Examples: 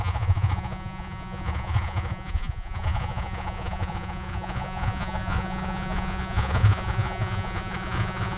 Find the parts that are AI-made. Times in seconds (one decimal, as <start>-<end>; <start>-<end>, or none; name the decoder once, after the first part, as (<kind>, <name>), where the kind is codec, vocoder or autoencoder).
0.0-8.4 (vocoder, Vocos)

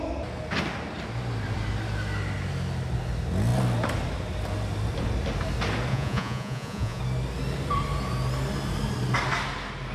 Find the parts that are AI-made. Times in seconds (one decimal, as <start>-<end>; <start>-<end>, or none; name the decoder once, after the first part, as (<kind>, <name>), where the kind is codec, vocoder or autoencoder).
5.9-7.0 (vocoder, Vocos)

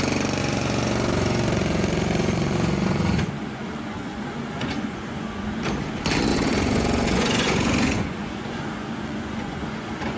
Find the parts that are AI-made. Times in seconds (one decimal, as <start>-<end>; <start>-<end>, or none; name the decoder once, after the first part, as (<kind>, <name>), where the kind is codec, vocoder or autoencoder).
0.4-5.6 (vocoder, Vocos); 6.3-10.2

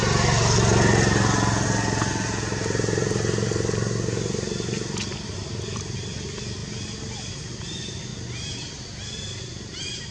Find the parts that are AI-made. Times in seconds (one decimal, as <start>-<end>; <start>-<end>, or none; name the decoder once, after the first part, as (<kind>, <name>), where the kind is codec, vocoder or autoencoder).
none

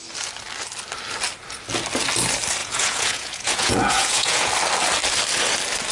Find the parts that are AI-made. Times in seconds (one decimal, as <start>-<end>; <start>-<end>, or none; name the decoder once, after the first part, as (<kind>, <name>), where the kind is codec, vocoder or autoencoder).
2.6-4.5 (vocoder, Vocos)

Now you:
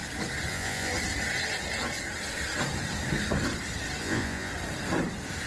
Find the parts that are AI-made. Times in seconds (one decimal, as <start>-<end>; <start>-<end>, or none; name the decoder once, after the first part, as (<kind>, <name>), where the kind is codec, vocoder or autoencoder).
0.5-0.9 (vocoder, Vocos); 4.0-4.5

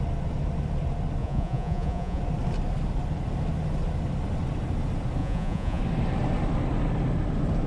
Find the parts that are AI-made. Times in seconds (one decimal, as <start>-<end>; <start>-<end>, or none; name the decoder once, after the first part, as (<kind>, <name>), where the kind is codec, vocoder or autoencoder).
1.2-2.2 (vocoder, Vocos); 5.2-5.8